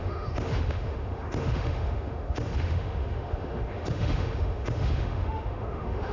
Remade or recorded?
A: remade